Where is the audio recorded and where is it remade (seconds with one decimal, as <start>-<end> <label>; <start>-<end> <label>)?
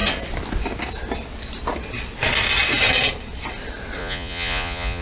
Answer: 0.0-4.0 recorded; 4.0-5.0 remade